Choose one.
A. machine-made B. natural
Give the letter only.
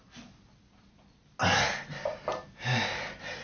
B